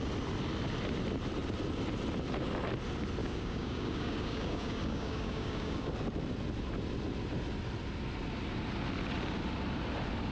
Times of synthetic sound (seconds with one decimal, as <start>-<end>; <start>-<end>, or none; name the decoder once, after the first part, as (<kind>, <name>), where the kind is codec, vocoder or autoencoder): 3.2-5.9 (codec, DAC)